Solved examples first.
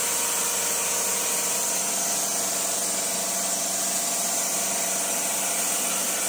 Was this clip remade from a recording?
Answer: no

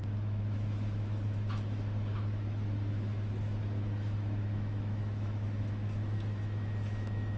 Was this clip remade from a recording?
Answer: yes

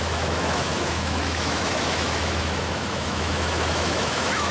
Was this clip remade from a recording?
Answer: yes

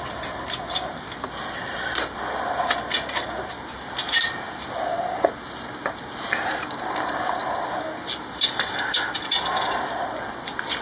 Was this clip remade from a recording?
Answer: no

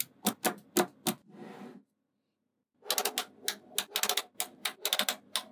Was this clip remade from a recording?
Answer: no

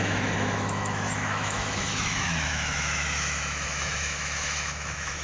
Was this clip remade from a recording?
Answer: yes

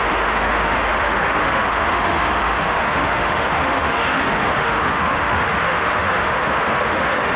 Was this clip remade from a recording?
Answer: yes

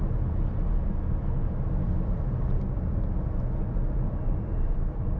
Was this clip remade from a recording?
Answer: no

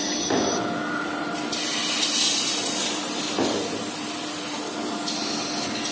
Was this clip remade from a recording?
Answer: no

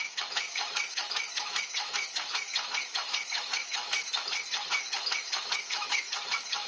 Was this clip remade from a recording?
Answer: yes